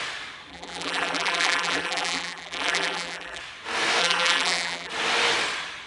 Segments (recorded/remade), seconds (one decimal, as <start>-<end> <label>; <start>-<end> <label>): 0.0-0.5 recorded; 0.5-3.4 remade; 3.4-4.0 recorded; 4.0-4.9 remade; 4.9-5.9 recorded